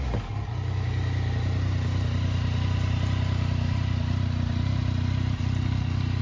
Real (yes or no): yes